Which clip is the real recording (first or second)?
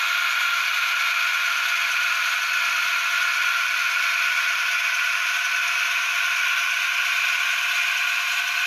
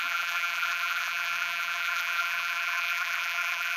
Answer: first